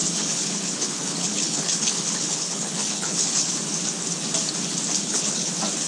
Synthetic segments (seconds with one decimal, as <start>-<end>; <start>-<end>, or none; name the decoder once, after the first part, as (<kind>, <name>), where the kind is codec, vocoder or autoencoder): 0.0-3.5 (codec, HILCodec); 5.0-5.5